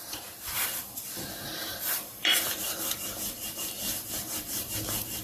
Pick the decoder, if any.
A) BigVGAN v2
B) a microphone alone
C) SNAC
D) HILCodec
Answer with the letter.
A